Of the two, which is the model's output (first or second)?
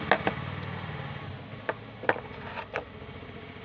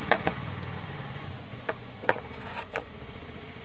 second